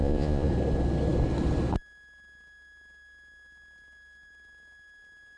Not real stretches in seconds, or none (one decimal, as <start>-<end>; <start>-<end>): 0.0-0.5